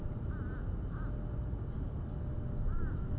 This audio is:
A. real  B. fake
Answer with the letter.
A